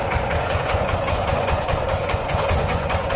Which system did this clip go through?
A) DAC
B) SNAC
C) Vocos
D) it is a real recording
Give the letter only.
C